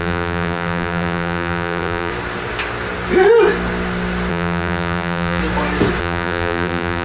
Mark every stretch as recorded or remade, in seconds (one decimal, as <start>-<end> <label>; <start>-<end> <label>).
0.0-2.1 remade; 2.1-4.3 recorded; 4.3-5.4 remade; 5.4-6.0 recorded; 6.0-7.0 remade